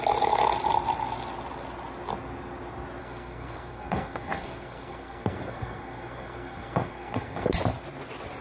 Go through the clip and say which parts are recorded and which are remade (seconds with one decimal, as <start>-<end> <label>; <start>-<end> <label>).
0.0-3.0 recorded; 3.0-7.5 remade; 7.5-8.4 recorded